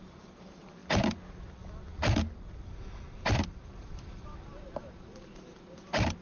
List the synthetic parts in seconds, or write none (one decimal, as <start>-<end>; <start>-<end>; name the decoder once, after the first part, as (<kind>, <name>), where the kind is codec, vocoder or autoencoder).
0.0-0.8 (vocoder, BigVGAN v2); 3.1-6.2